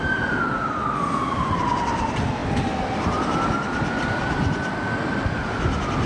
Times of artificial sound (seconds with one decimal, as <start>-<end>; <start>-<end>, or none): none